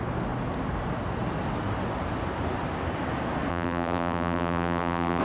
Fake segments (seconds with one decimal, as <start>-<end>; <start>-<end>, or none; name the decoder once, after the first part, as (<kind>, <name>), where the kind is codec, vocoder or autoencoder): 3.5-5.2 (vocoder, BigVGAN v2)